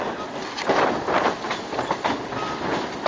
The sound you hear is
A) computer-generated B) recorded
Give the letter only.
B